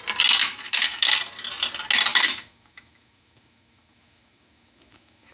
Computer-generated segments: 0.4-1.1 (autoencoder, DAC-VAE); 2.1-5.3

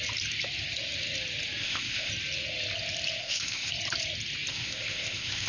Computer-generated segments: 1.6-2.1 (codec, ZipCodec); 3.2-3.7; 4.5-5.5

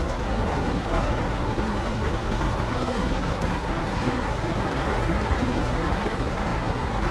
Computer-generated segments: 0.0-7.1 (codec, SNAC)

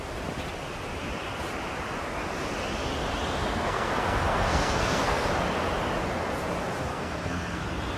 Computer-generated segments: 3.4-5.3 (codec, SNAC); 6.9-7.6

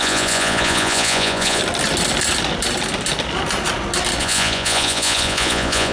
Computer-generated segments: 0.0-1.6 (vocoder, Vocos); 4.2-5.9